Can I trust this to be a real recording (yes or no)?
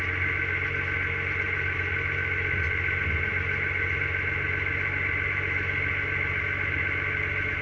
yes